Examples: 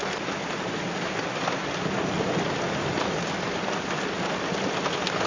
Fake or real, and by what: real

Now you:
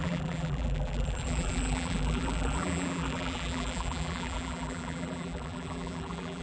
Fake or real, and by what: fake, vocoder, BigVGAN v2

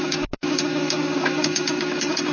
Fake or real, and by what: fake, codec, DAC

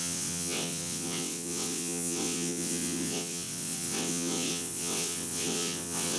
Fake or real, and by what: fake, vocoder, WaveNeXt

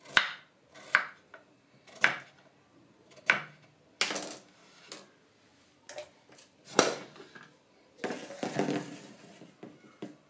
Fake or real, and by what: real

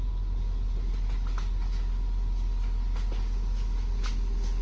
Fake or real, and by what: real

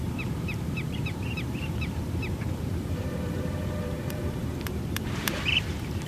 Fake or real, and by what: fake, vocoder, BigVGAN v2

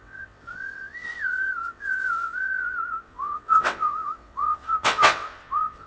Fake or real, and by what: fake, vocoder, WaveNeXt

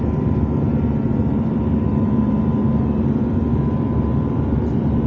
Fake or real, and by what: fake, vocoder, BigVGAN v2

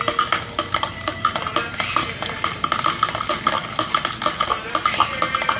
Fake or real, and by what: real